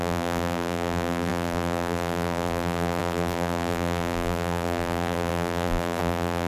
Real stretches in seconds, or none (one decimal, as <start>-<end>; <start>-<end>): none

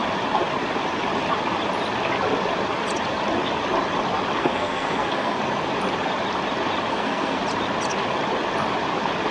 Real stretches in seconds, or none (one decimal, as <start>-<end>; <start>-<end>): 0.0-4.4; 5.4-6.9; 7.4-9.3

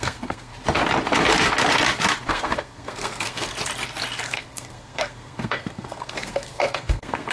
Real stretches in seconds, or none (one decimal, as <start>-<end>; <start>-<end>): 0.5-2.3; 3.5-4.2

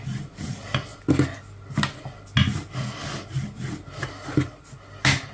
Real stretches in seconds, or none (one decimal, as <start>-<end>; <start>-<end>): 0.0-5.3